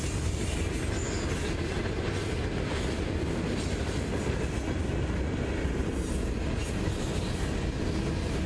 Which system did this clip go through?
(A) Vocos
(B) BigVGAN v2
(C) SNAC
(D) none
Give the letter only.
D